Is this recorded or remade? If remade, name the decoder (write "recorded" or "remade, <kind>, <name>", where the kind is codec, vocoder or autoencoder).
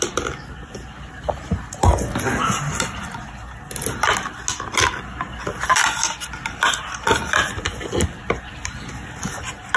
recorded